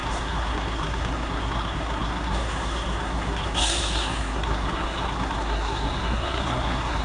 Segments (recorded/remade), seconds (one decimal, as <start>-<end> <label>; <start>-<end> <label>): 0.0-7.0 remade